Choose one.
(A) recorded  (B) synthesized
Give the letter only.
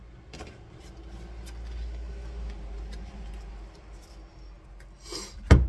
A